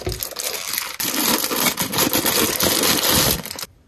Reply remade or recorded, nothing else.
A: recorded